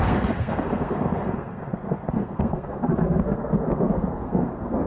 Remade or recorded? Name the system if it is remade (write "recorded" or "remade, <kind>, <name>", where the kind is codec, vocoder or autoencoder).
remade, codec, SNAC